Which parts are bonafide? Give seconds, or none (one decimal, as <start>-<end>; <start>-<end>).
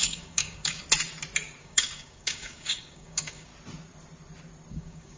0.8-1.6; 3.5-4.7